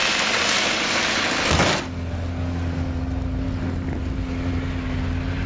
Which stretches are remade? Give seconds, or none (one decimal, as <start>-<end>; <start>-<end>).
none